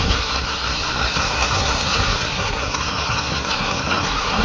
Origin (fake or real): fake